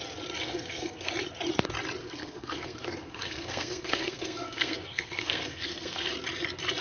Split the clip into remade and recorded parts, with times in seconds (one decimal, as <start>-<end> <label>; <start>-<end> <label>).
0.0-0.4 recorded; 0.4-1.1 remade; 1.1-2.0 recorded; 2.0-6.1 remade; 6.1-6.8 recorded